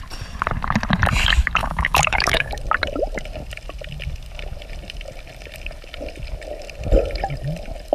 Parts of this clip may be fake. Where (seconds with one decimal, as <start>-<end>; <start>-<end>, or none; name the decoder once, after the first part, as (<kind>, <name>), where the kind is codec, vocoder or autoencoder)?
1.6-2.5 (autoencoder, DAC-VAE)